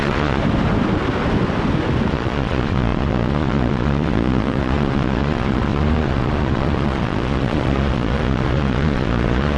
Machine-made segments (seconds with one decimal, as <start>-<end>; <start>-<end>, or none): 0.0-0.4; 2.1-9.6